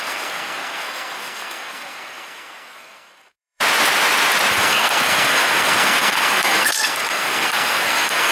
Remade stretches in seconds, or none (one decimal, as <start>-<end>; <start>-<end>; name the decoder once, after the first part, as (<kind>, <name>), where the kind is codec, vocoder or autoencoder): 0.0-3.6 (codec, SNAC); 4.5-8.3